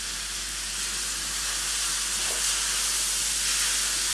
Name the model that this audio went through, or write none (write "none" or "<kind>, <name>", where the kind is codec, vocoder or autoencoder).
none